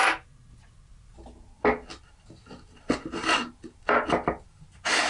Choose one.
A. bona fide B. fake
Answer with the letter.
A